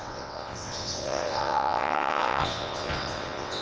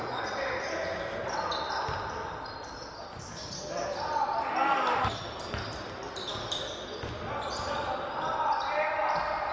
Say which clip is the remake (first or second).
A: first